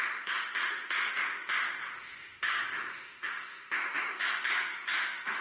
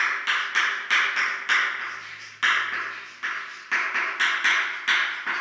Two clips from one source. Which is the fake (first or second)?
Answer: first